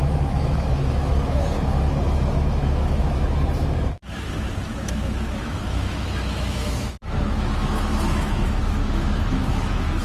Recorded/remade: remade